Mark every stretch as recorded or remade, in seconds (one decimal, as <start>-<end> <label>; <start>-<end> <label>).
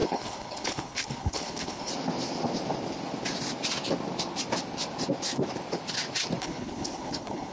0.0-1.9 remade; 1.9-6.4 recorded; 6.4-7.5 remade